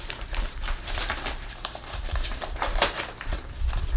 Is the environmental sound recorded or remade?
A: remade